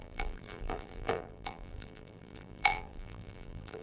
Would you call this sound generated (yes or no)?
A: yes